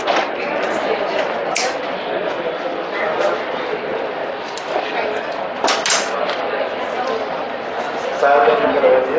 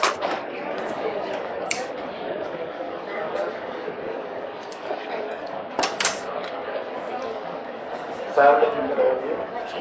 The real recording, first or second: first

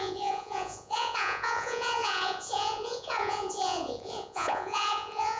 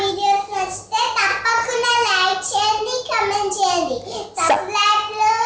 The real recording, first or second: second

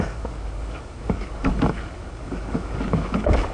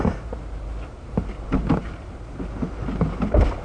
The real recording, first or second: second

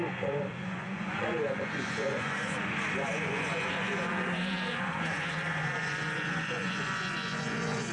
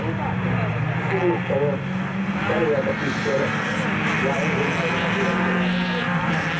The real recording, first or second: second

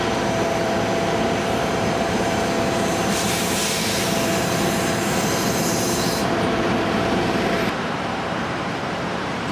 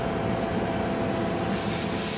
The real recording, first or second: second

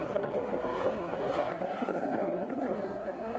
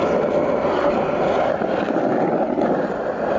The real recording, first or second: second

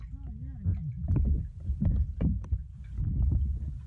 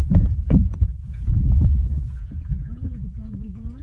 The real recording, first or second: first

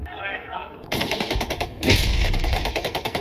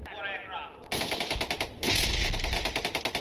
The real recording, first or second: second